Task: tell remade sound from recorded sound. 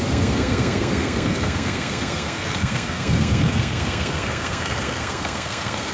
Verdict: remade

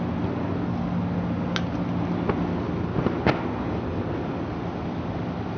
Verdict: recorded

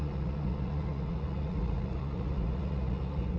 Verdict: remade